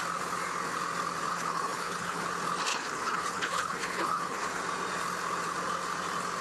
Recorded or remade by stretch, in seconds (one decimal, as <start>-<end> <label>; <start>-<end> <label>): 0.0-1.3 recorded; 1.3-2.2 remade; 2.2-2.7 recorded; 2.7-4.6 remade; 4.6-6.4 recorded